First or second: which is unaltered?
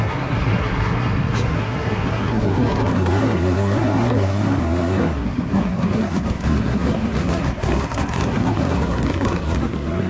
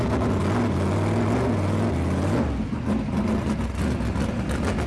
second